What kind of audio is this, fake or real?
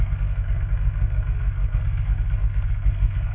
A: fake